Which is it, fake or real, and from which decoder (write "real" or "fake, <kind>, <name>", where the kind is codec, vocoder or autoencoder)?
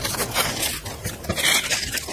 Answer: real